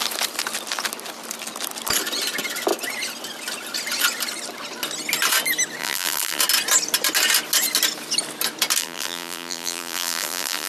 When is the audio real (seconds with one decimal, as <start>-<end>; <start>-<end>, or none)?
0.0-5.8; 6.4-8.8